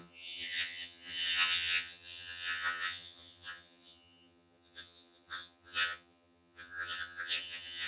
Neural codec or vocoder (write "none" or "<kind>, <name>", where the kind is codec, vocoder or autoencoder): vocoder, HiFi-GAN